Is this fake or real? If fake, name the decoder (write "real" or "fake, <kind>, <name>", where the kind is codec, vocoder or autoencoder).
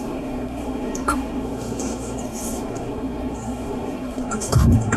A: fake, codec, SNAC